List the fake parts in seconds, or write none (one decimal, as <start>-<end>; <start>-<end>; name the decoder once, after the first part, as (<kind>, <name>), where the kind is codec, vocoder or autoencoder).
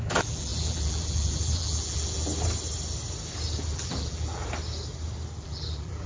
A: 0.0-2.3 (vocoder, BigVGAN v2); 3.7-4.4; 5.4-6.1